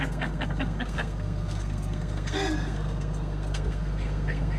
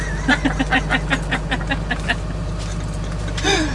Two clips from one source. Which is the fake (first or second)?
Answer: first